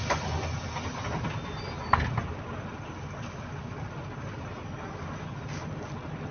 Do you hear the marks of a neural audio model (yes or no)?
no